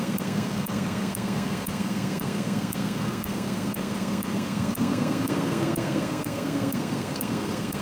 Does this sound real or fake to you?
fake